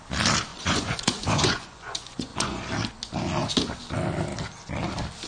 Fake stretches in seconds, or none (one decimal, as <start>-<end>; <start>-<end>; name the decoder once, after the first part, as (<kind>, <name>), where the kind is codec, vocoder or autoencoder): 0.5-2.6 (vocoder, Vocos)